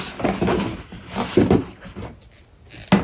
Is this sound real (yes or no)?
yes